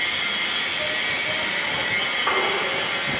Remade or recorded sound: recorded